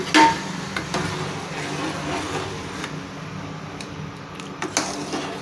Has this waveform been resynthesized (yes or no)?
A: no